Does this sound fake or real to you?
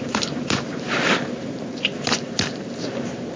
fake